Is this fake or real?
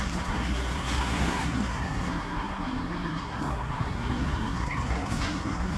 fake